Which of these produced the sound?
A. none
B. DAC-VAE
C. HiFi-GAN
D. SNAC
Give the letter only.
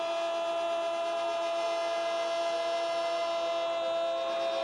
A